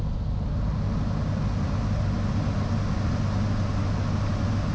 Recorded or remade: recorded